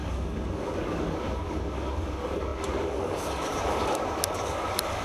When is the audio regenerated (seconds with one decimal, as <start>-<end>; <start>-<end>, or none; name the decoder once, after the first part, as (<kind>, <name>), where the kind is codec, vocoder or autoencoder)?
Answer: 0.0-5.0 (codec, DAC)